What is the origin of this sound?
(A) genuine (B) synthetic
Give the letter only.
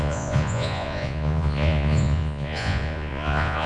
B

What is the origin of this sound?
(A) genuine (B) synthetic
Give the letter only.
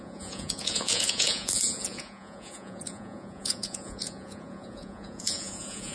B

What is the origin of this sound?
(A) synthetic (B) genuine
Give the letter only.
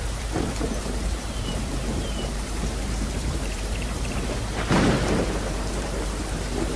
A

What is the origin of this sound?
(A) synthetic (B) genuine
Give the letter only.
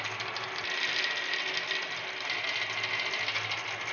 B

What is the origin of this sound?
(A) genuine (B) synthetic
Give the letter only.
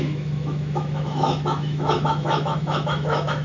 B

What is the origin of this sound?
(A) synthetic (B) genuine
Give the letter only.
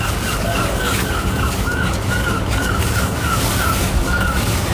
A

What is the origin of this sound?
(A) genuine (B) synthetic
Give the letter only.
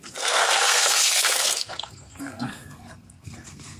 B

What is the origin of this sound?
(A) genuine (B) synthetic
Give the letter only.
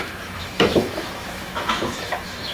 B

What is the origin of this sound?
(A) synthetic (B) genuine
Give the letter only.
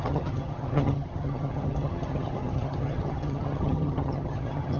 A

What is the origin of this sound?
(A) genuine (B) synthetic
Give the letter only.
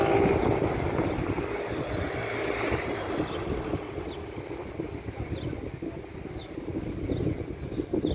A